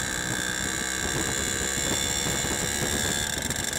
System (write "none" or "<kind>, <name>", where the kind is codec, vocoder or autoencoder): none